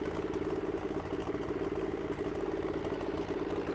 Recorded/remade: remade